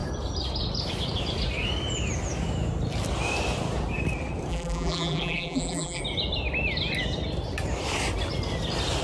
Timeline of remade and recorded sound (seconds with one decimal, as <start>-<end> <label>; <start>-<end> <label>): 0.0-4.5 recorded; 4.5-6.0 remade; 6.0-9.0 recorded

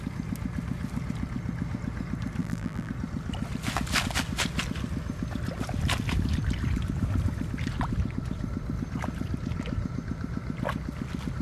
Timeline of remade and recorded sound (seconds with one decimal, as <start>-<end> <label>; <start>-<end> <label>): 0.0-2.4 recorded; 2.4-2.9 remade; 2.9-11.4 recorded

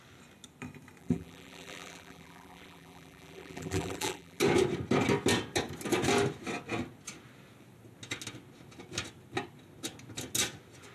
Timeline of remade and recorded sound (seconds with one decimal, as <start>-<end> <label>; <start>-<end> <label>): 0.0-1.0 recorded; 1.0-4.4 remade; 4.4-10.9 recorded

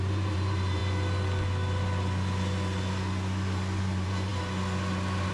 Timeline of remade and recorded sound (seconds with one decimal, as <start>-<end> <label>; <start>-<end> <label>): 0.0-0.8 remade; 0.8-3.8 recorded; 3.8-4.3 remade; 4.3-5.3 recorded

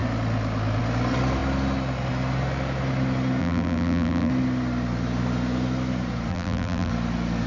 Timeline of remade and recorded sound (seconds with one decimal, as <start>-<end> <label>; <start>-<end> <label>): 0.0-3.4 recorded; 3.4-4.3 remade; 4.3-6.3 recorded; 6.3-6.9 remade; 6.9-7.5 recorded

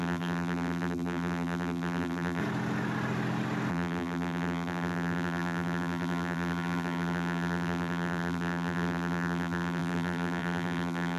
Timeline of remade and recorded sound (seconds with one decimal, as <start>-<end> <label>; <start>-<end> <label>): 0.0-2.4 remade; 2.4-3.7 recorded; 3.7-11.2 remade

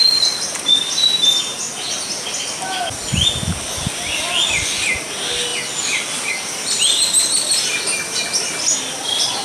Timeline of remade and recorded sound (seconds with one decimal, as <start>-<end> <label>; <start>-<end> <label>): 0.0-9.4 recorded